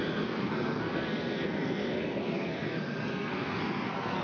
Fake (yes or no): yes